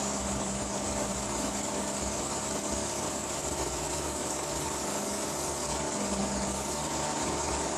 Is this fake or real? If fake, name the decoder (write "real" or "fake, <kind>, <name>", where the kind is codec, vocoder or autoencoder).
fake, codec, DAC